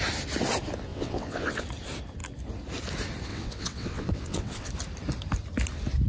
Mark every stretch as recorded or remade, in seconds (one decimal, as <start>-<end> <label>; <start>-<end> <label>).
0.0-0.9 recorded; 0.9-1.6 remade; 1.6-3.3 recorded; 3.3-4.7 remade; 4.7-6.1 recorded